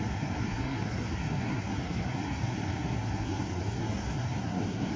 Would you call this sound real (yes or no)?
no